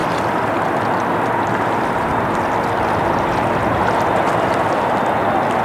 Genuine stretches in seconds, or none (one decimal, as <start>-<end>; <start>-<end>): 0.0-5.6